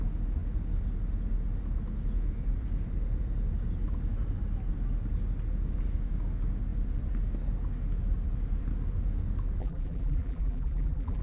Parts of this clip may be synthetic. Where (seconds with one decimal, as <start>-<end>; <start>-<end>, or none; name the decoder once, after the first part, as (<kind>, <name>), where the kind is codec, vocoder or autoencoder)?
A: 9.6-11.2 (vocoder, BigVGAN v2)